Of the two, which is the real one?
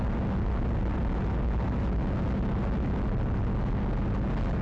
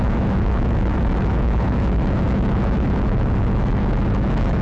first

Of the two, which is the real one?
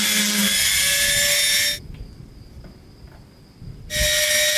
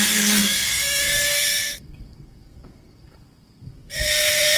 first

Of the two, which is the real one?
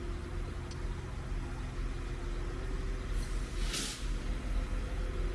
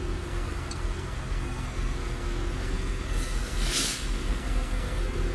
first